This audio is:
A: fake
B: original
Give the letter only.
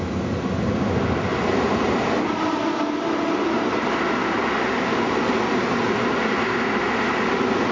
B